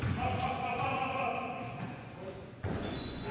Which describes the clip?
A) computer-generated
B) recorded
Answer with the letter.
A